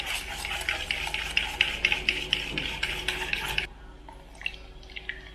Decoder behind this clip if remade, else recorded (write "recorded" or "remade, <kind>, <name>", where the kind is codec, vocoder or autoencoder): recorded